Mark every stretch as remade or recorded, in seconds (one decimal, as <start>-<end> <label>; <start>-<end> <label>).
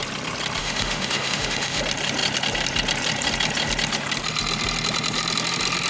0.0-0.6 recorded; 0.6-1.8 remade; 1.8-5.9 recorded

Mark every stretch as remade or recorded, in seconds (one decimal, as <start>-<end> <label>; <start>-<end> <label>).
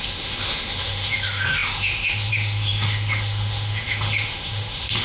0.0-5.0 remade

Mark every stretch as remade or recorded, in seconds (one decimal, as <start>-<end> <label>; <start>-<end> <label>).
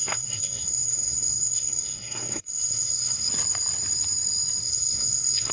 0.0-3.3 remade; 3.3-4.6 recorded; 4.6-5.5 remade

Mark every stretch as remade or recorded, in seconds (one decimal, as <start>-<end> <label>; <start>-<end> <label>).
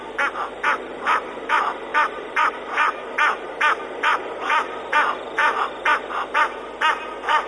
0.0-1.9 recorded; 1.9-2.5 remade; 2.5-5.4 recorded; 5.4-6.0 remade; 6.0-7.5 recorded